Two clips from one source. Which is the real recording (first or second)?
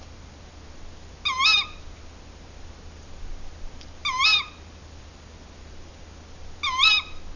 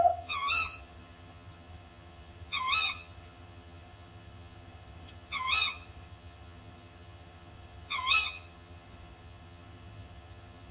first